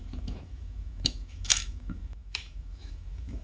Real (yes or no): no